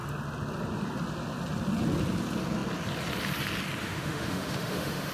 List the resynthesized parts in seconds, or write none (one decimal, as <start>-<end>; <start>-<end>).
3.8-5.1